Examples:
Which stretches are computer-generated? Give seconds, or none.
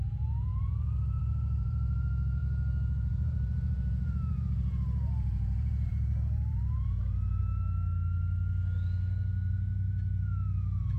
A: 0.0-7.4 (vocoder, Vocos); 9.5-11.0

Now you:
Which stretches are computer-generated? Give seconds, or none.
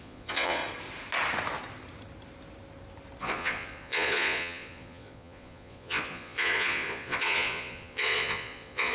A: 0.0-0.6 (vocoder, Vocos); 3.2-8.9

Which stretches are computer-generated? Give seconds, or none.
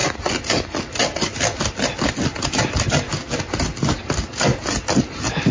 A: none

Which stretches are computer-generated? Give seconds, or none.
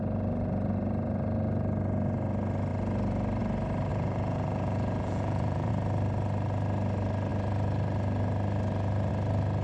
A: 3.9-5.7 (vocoder, Vocos)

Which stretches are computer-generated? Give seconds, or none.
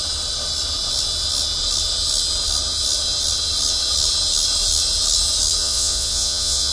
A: 5.6-6.7 (vocoder, Vocos)